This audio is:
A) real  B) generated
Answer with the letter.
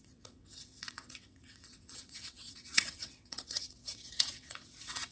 B